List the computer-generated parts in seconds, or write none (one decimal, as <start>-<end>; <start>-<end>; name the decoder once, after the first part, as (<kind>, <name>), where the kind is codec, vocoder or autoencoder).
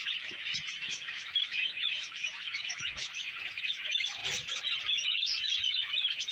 0.0-4.2 (autoencoder, DAC-VAE); 4.9-6.3